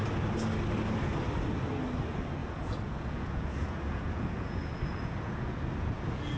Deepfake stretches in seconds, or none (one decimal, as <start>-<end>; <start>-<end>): 2.4-6.4

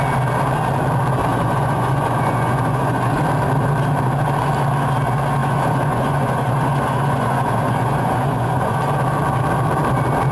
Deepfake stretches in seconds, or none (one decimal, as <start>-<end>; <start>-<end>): 1.3-3.2; 5.4-8.8